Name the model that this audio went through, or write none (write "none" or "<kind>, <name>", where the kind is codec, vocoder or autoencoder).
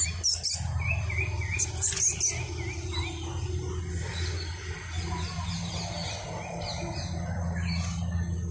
none